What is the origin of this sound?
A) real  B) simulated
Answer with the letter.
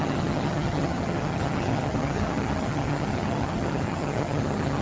B